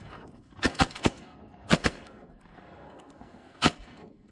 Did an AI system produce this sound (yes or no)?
yes